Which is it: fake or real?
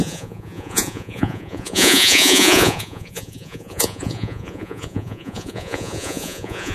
fake